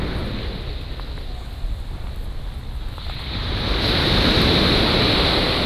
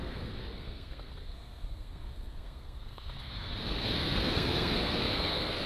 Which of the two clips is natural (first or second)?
first